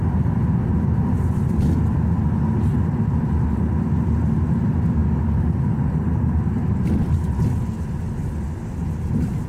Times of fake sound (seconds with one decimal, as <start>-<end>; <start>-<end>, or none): none